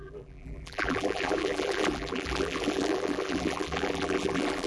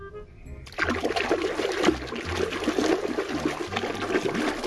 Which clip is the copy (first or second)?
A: first